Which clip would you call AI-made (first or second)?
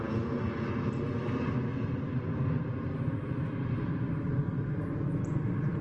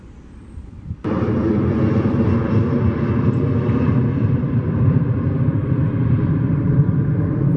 second